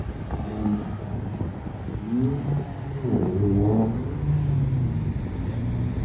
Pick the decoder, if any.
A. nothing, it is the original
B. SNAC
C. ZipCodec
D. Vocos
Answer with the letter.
A